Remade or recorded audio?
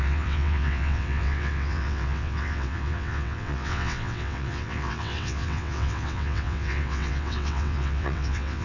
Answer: remade